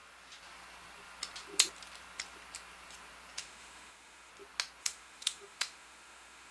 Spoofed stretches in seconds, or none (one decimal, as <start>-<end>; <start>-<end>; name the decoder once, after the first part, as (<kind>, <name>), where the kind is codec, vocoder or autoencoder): 3.4-4.3 (autoencoder, DAC-VAE); 4.8-6.5